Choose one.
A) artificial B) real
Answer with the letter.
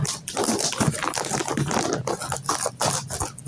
B